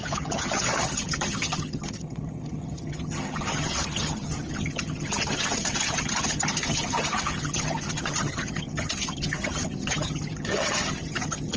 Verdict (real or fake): fake